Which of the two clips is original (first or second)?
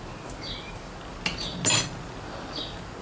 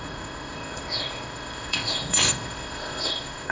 first